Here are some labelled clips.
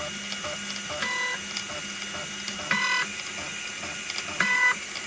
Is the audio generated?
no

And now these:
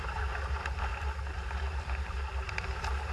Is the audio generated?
no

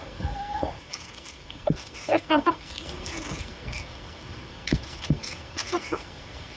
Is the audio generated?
yes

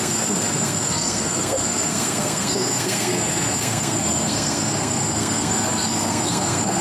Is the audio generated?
yes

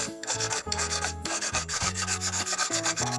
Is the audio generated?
yes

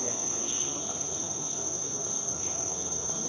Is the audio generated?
yes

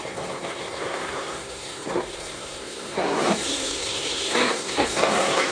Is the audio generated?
yes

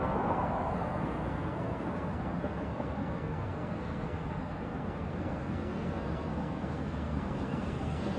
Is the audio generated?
yes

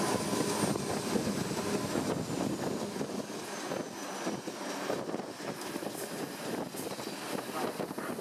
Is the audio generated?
no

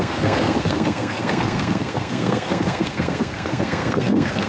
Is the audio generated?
yes